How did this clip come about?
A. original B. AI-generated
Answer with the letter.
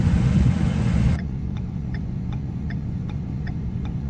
B